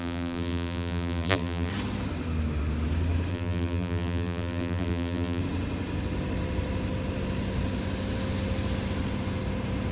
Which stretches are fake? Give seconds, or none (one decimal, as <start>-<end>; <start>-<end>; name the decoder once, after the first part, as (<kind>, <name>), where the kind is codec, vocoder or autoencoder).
0.0-1.7 (vocoder, BigVGAN v2); 3.3-5.4